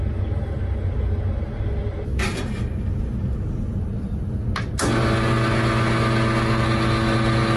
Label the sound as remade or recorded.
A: recorded